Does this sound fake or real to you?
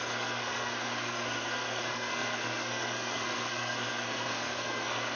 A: fake